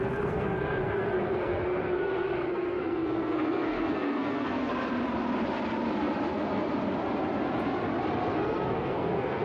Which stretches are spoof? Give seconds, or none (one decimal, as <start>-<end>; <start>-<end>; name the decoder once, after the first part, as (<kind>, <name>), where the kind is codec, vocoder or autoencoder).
0.0-4.7 (codec, SNAC); 8.3-9.4